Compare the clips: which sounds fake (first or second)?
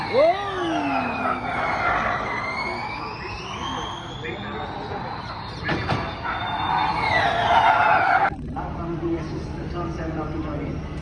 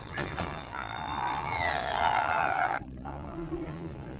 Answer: second